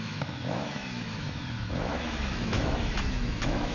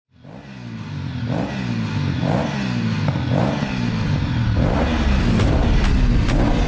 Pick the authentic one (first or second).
second